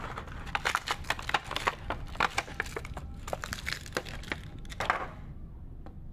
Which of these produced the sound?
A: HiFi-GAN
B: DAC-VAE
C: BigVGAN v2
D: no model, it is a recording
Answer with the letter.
D